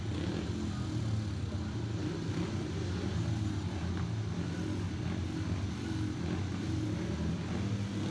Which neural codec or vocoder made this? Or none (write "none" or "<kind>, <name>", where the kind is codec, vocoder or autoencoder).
none